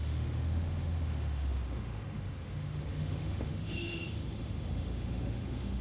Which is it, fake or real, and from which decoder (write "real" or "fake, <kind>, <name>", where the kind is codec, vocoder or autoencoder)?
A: fake, autoencoder, DAC-VAE